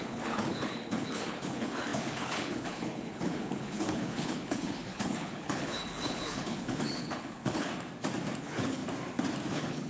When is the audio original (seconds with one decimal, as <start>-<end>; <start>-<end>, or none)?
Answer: 7.7-8.4; 8.8-9.5